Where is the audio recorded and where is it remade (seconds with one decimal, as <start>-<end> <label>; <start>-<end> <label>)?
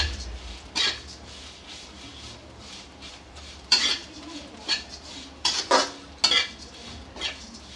0.0-2.4 recorded; 2.4-5.6 remade; 5.6-7.8 recorded